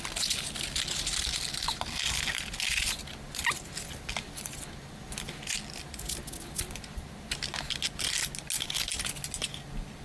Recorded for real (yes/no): yes